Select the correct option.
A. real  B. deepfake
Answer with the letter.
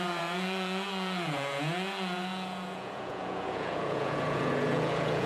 B